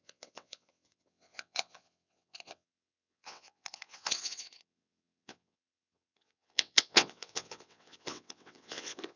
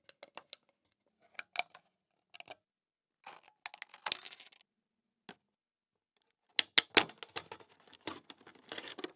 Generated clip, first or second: first